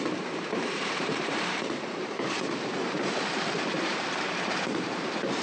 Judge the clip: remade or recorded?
remade